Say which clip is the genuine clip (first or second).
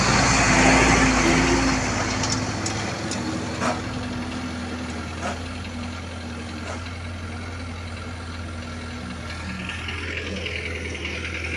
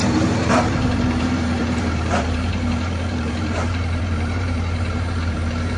first